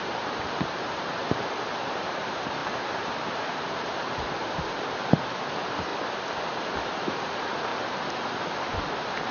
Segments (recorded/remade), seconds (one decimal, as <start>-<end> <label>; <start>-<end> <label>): 0.0-5.9 remade; 5.9-6.9 recorded; 6.9-7.7 remade; 7.7-8.9 recorded; 8.9-9.3 remade